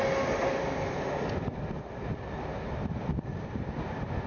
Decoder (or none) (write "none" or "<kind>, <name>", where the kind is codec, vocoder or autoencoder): none